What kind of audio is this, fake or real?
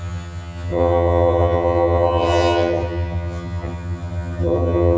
fake